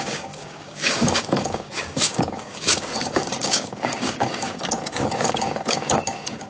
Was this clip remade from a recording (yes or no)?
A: yes